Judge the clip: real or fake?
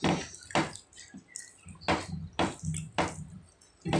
real